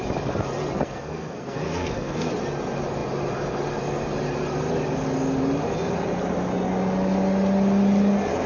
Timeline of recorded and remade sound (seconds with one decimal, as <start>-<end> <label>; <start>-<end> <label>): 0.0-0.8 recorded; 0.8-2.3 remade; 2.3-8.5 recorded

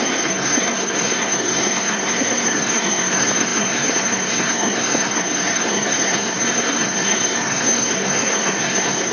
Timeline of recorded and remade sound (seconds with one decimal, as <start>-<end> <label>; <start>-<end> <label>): 0.0-9.1 remade

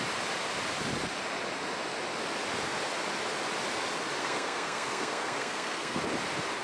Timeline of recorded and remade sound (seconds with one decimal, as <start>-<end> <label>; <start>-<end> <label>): 0.0-4.2 recorded; 4.2-6.0 remade; 6.0-6.6 recorded

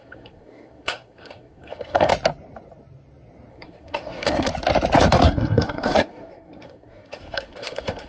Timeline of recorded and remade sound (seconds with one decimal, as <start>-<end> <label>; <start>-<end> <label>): 0.0-2.1 remade; 2.1-3.5 recorded; 3.5-4.5 remade; 4.5-5.2 recorded; 5.2-8.1 remade

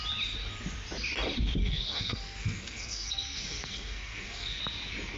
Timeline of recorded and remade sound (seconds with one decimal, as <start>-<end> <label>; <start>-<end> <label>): 0.0-1.6 recorded; 1.6-4.6 remade; 4.6-5.2 recorded

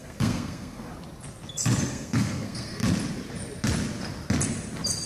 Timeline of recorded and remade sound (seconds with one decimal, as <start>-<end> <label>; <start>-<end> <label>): 0.0-0.9 remade; 0.9-1.9 recorded; 1.9-2.8 remade; 2.8-5.1 recorded